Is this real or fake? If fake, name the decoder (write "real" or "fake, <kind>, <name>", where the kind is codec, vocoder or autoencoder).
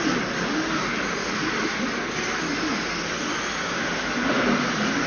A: real